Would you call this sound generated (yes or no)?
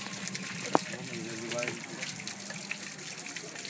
no